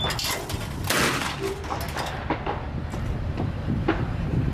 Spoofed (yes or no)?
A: no